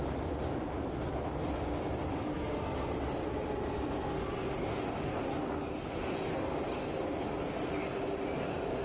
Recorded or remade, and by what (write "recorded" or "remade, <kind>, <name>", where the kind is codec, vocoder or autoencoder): recorded